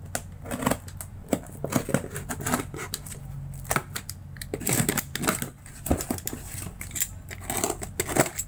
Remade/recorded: recorded